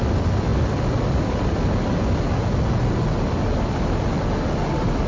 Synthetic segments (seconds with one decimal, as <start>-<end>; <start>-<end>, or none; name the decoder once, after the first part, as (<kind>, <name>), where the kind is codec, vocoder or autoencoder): none